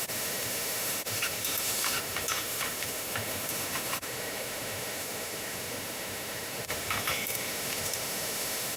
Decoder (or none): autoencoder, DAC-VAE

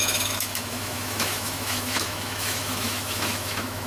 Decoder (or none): autoencoder, DAC-VAE